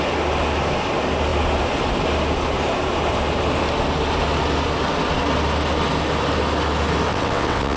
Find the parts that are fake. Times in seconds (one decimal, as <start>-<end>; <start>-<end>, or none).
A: 7.1-7.8